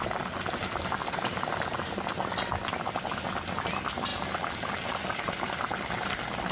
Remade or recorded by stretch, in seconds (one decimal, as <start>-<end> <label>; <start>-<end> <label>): 0.0-6.5 recorded